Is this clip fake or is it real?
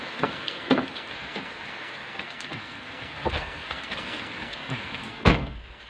fake